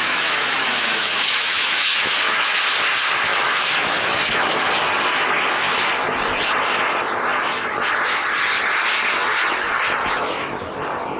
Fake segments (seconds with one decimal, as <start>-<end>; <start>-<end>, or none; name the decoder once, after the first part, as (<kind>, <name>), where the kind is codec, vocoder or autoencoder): 0.0-2.6 (autoencoder, DAC-VAE); 3.3-4.6; 10.2-10.7